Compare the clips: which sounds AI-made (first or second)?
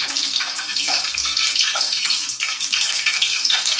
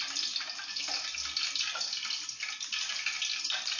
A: first